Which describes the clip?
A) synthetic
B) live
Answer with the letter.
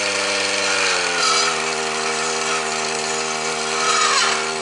B